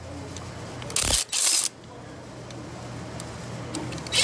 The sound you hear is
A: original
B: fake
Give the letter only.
A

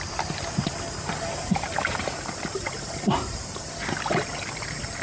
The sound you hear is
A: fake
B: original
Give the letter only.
A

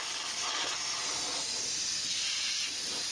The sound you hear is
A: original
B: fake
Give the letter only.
A